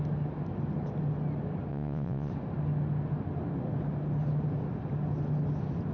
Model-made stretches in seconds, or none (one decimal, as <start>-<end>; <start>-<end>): 1.7-2.3